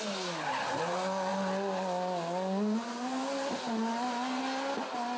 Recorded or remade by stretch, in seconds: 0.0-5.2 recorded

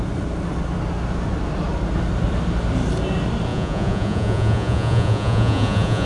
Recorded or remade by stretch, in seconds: 0.0-3.5 recorded; 3.5-6.1 remade